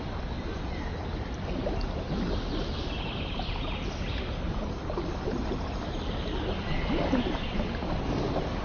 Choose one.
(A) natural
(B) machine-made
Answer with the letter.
A